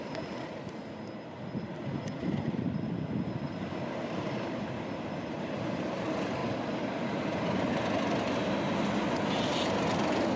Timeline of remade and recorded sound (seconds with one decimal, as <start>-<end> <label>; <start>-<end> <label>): 0.0-3.6 recorded; 3.6-5.1 remade; 5.1-10.4 recorded